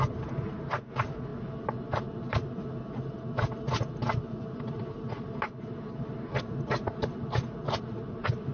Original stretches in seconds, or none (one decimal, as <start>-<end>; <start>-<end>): 0.0-8.5